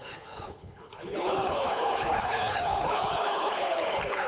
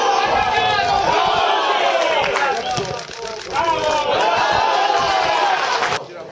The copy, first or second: first